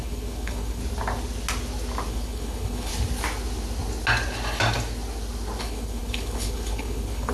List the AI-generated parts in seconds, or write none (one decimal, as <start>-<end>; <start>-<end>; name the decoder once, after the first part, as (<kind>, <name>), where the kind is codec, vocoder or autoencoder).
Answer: 0.0-0.8 (codec, HILCodec); 2.1-2.9; 5.6-7.3